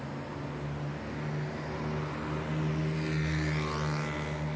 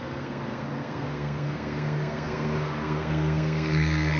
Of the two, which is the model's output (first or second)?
second